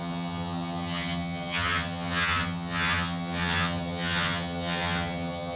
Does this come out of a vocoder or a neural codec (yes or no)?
yes